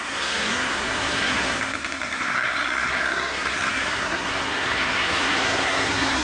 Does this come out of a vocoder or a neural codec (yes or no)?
yes